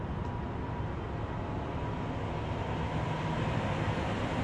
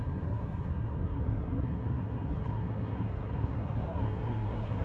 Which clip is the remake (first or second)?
second